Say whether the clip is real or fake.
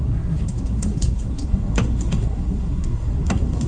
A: fake